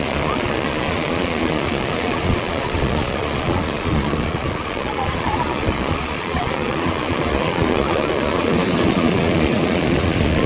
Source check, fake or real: fake